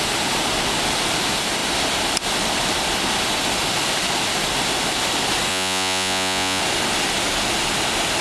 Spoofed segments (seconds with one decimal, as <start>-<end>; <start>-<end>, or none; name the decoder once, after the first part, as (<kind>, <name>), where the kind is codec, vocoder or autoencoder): 5.5-6.6 (vocoder, Vocos)